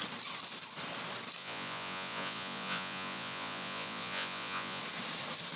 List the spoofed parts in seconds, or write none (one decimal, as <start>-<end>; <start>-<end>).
1.4-4.8